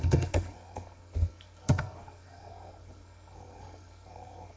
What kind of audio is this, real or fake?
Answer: fake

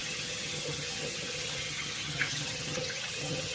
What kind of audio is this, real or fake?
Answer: fake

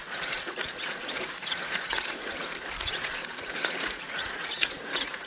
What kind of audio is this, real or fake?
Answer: fake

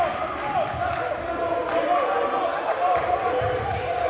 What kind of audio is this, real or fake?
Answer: real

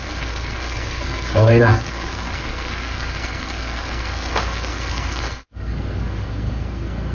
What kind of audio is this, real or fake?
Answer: fake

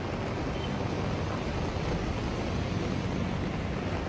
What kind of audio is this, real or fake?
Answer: real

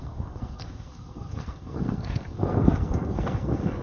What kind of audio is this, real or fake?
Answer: fake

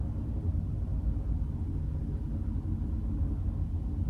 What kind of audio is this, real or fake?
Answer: real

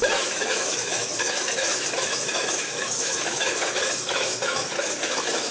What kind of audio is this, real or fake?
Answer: fake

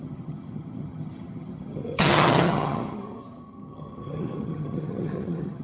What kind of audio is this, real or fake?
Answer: fake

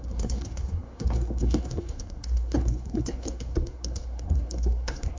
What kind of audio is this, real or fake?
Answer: fake